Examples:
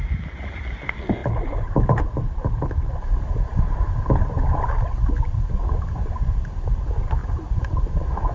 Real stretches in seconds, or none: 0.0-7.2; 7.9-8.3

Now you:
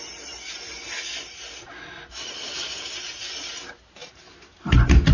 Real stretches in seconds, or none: 0.0-4.0

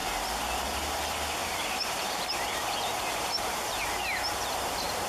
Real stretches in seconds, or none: 0.0-1.4; 3.9-5.1

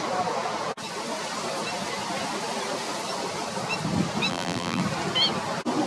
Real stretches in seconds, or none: 0.0-4.3; 4.8-5.9

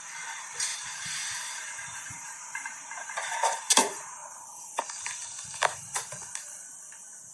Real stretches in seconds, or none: 0.0-0.7; 4.8-7.3